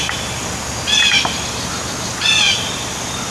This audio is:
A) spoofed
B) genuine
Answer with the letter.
B